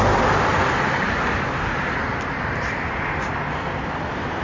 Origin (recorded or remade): recorded